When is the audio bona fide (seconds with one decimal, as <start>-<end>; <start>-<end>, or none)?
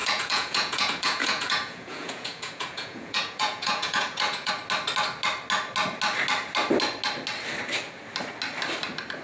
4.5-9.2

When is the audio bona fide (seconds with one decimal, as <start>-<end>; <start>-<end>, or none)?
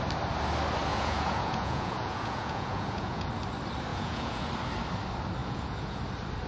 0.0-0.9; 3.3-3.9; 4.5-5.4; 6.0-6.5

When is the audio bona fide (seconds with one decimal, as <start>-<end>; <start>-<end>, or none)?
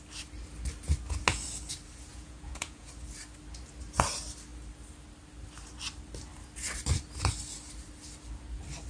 0.0-2.1; 2.9-8.9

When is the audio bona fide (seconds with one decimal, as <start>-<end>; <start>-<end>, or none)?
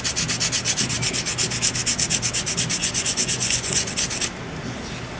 0.0-2.8; 3.9-5.2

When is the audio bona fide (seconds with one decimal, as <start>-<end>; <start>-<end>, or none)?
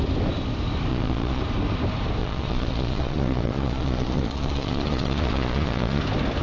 0.0-0.9; 1.4-2.2; 6.0-6.4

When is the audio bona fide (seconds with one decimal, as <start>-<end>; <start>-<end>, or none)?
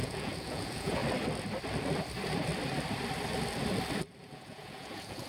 1.0-4.2